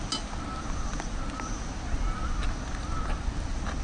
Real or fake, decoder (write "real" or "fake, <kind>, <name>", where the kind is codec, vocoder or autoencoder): real